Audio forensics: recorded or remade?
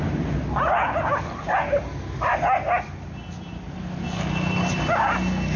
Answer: recorded